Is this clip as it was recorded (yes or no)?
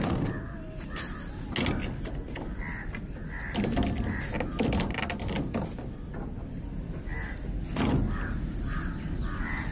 yes